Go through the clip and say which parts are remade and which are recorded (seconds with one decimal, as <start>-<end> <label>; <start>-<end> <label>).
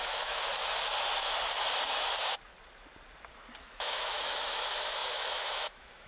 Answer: 0.0-0.5 remade; 0.5-3.6 recorded; 3.6-6.1 remade